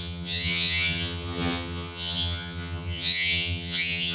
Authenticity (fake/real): fake